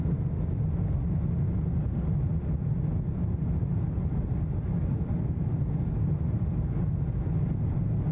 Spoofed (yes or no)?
no